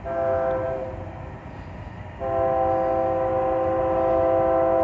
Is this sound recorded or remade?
recorded